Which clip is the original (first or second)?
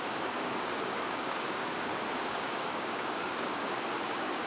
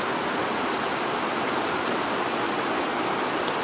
second